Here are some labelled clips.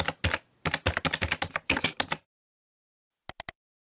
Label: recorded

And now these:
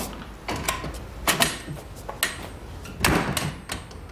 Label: recorded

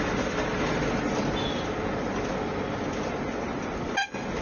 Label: recorded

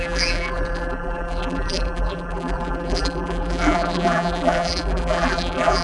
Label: remade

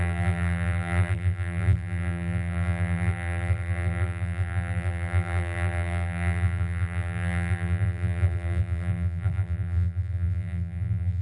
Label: remade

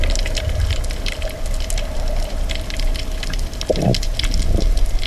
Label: recorded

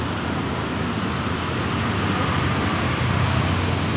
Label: recorded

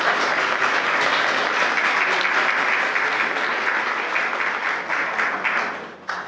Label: recorded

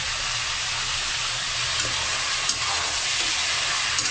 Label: recorded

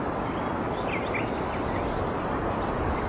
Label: recorded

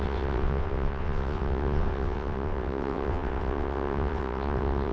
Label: remade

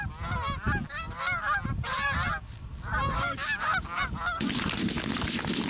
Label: recorded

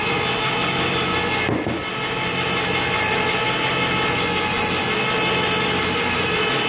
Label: recorded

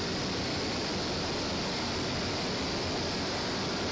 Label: recorded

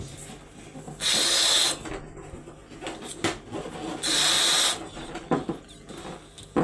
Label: recorded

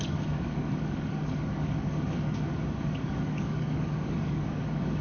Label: remade